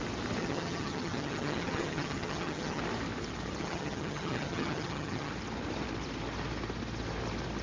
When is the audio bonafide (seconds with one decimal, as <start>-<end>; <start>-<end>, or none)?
0.0-0.4; 2.8-3.6; 5.3-7.6